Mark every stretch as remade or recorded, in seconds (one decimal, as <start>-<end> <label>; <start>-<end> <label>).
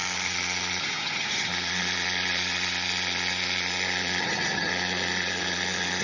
0.0-0.8 recorded; 0.8-1.5 remade; 1.5-4.2 recorded; 4.2-4.7 remade; 4.7-6.0 recorded